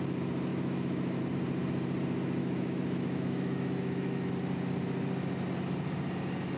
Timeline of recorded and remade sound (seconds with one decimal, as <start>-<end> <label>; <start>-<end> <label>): 0.0-0.5 recorded; 0.5-1.2 remade; 1.2-2.4 recorded; 2.4-4.3 remade; 4.3-6.6 recorded